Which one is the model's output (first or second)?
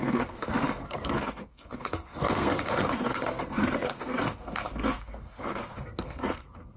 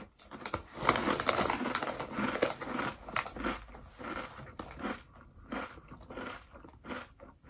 first